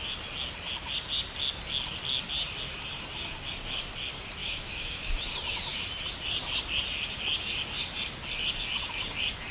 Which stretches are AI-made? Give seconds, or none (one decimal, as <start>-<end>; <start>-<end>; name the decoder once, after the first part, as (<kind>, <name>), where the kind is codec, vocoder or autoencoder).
4.4-5.3 (autoencoder, DAC-VAE)

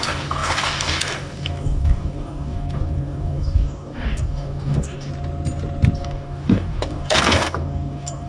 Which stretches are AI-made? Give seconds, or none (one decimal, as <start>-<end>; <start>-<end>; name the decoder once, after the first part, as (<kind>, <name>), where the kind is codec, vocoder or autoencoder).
0.0-5.1 (codec, DAC); 6.0-8.3

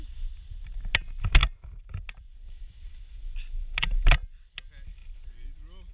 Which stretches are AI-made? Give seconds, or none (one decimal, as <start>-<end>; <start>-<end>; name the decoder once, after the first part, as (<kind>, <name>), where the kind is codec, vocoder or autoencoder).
none

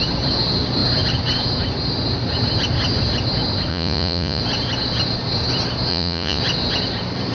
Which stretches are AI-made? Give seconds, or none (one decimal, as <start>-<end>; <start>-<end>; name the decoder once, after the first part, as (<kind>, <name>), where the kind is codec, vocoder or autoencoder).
3.7-4.4 (vocoder, Vocos); 5.9-6.4

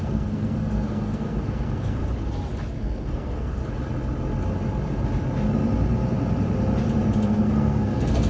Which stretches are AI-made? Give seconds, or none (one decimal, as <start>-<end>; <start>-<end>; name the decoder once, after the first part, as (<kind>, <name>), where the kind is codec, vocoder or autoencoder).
0.0-2.0 (codec, SNAC); 2.7-3.6; 7.2-8.3

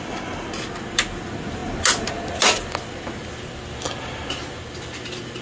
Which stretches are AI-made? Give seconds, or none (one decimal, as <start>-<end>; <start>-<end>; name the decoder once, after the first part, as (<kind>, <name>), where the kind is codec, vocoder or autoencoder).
none

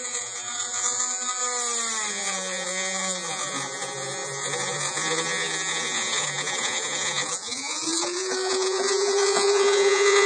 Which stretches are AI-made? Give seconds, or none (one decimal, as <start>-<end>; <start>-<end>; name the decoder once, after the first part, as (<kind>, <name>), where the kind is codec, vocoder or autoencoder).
0.0-1.4 (vocoder, Vocos); 2.1-10.3

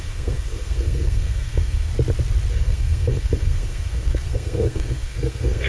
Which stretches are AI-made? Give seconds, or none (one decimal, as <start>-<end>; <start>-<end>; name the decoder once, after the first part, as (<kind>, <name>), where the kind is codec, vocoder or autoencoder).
0.0-1.9 (codec, SNAC); 2.5-5.7